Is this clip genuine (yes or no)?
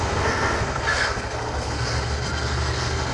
no